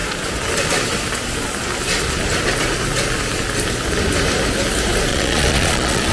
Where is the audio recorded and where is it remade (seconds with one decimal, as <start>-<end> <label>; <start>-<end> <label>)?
0.0-5.1 recorded; 5.1-6.1 remade